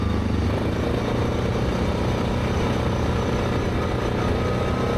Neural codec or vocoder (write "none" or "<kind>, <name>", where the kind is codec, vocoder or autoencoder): none